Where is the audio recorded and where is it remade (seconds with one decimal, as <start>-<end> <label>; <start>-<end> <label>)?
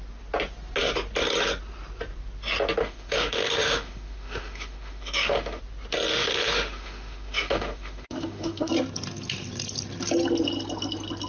0.0-2.8 recorded; 2.8-5.6 remade; 5.6-6.1 recorded; 6.1-8.7 remade; 8.7-11.3 recorded